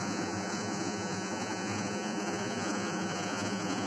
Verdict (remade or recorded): remade